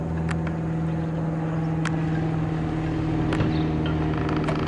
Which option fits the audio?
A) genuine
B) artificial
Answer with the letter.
A